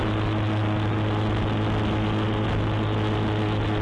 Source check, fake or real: real